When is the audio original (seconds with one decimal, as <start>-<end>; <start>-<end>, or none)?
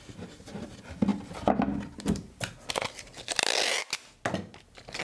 0.0-5.0